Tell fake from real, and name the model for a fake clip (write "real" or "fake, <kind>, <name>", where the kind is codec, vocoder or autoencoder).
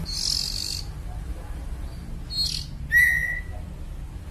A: real